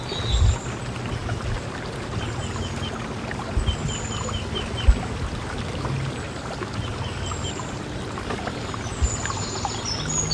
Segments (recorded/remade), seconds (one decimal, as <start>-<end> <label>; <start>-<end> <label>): 0.0-10.3 recorded